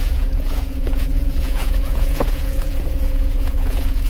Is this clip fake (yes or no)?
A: yes